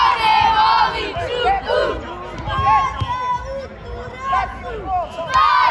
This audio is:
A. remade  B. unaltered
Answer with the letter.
B